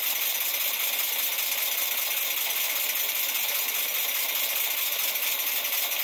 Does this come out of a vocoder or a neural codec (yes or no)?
no